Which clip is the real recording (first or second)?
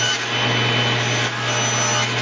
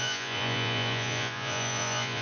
first